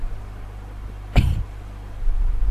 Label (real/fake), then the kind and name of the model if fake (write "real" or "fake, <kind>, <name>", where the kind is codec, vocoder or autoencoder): real